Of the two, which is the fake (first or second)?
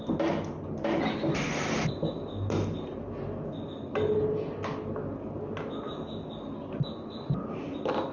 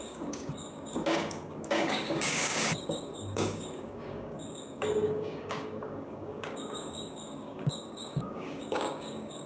second